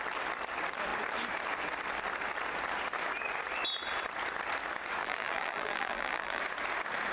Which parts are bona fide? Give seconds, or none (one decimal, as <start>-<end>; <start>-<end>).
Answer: 0.0-5.0; 6.4-7.1